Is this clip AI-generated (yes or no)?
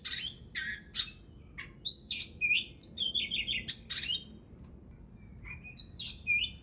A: no